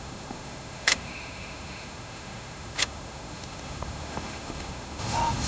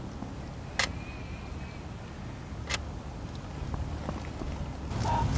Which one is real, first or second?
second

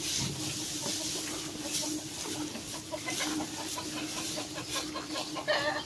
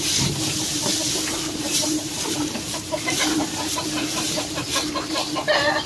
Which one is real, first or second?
first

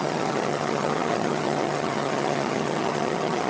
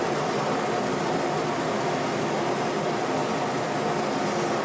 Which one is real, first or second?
second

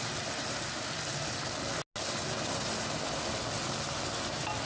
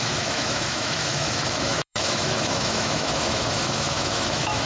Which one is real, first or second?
first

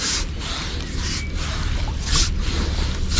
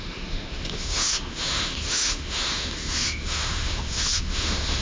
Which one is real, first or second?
first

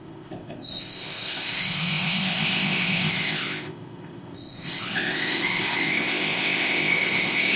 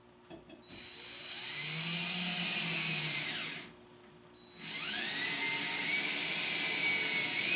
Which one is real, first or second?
second